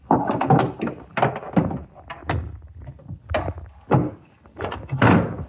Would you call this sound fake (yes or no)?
no